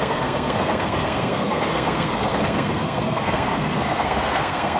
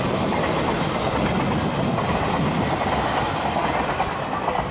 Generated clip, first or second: first